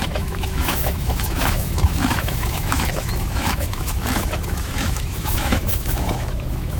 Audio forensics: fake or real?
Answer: fake